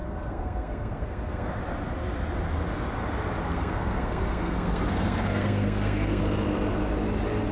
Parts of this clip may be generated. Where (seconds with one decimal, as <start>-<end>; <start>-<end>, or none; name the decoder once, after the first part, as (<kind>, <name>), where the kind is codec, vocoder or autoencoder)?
0.0-1.5 (codec, SNAC); 3.5-6.2